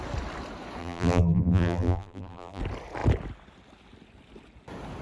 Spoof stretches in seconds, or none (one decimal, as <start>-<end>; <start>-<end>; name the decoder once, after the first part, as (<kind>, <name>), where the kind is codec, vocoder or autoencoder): 0.8-2.6 (vocoder, BigVGAN v2)